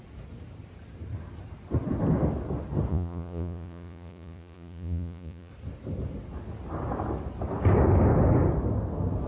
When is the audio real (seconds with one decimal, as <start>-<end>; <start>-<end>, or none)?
0.0-2.9; 5.5-9.3